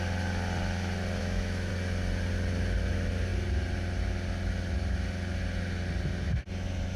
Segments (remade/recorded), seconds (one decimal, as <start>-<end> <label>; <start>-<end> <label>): 0.0-1.2 recorded; 1.2-1.7 remade; 1.7-7.0 recorded